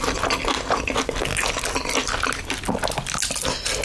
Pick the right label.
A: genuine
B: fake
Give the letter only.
A